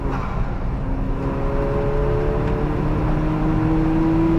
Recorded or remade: recorded